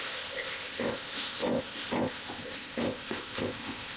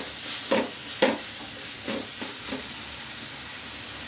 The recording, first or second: second